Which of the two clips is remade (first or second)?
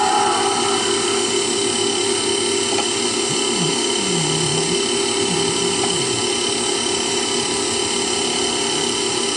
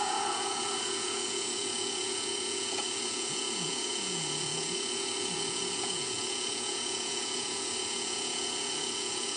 second